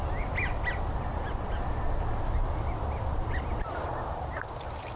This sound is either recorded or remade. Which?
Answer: recorded